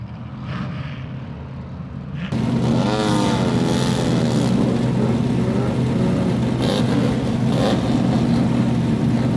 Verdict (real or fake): real